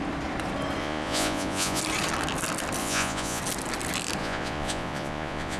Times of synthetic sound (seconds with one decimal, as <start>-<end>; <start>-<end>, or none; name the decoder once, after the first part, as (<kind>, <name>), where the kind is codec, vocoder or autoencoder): 0.8-1.8 (vocoder, Vocos); 2.8-3.4; 4.2-5.6